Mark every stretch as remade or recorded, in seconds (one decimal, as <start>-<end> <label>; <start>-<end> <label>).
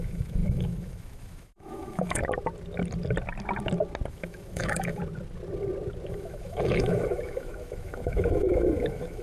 0.0-2.2 remade; 2.2-4.1 recorded; 4.1-5.0 remade; 5.0-6.1 recorded; 6.1-9.2 remade